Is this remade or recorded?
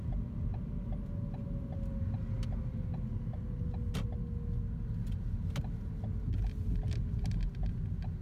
recorded